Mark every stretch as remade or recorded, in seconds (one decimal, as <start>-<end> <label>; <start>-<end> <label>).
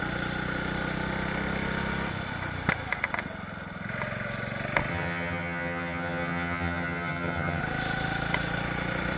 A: 0.0-4.9 recorded; 4.9-7.6 remade; 7.6-9.2 recorded